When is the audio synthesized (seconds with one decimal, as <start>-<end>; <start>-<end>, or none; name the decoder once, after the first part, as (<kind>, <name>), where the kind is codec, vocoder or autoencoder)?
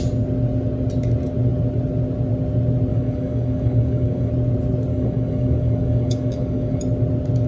2.9-4.3 (codec, DAC); 4.9-6.8